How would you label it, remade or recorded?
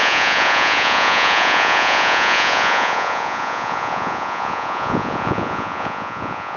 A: remade